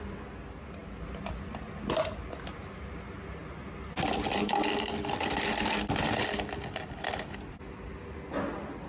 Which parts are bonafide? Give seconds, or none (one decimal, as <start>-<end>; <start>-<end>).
0.0-8.9

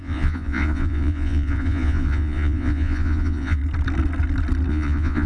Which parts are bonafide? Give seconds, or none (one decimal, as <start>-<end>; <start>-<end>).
3.6-4.7